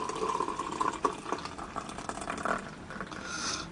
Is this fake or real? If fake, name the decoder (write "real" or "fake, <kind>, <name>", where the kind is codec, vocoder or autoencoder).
real